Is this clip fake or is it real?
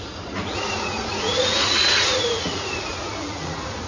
fake